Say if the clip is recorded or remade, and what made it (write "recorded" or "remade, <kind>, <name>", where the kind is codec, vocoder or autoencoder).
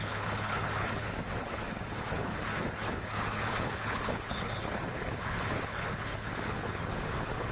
remade, codec, HILCodec